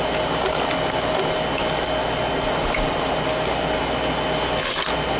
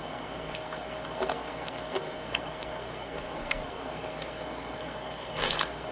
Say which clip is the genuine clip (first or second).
first